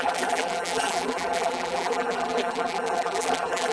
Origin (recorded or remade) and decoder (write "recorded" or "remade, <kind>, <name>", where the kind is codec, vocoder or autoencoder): remade, vocoder, BigVGAN v2